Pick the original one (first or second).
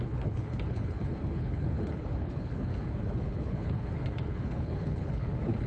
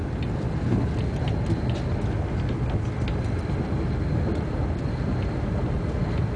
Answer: second